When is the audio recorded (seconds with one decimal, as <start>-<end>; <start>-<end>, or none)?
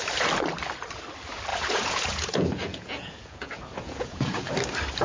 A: 0.0-1.5; 4.5-5.0